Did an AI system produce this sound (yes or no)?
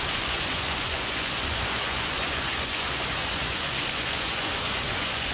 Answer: yes